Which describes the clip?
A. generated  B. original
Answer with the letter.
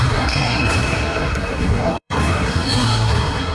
A